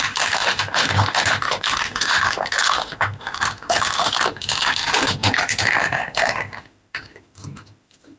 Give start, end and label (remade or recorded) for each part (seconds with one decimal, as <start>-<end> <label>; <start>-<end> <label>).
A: 0.0-8.2 remade